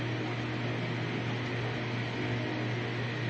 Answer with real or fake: real